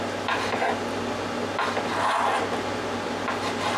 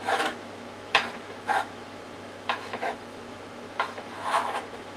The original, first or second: first